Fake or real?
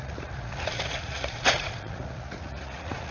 fake